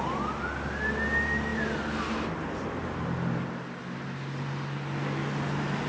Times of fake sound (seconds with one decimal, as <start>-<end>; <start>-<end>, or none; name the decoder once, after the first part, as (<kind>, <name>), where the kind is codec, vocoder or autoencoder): none